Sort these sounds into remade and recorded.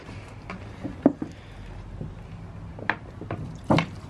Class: recorded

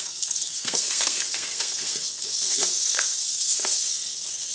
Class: remade